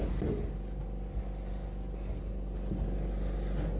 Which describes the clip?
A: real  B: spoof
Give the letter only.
A